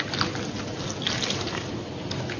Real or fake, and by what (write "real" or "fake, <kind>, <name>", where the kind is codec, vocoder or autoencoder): real